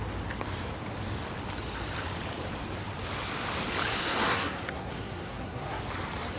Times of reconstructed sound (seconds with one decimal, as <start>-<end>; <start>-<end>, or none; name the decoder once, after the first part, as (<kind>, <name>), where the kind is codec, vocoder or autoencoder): 4.0-5.8 (codec, SNAC)